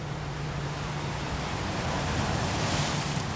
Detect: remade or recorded remade